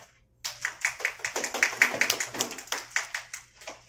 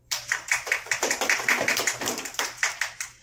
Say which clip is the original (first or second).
first